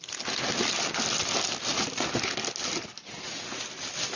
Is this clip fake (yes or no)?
no